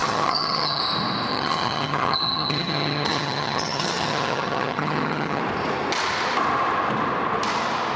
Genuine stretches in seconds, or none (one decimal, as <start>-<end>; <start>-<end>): 0.8-1.3; 5.4-8.0